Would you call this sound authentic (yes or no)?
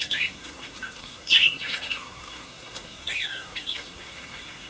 no